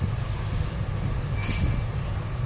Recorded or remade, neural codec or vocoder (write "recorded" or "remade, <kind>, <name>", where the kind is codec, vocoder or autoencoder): recorded